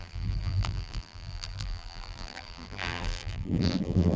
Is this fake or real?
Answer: fake